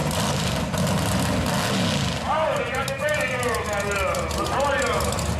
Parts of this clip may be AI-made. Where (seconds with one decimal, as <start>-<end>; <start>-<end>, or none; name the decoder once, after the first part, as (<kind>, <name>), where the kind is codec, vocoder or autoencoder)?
0.0-0.6 (vocoder, BigVGAN v2)